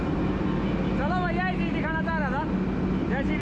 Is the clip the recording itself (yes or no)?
yes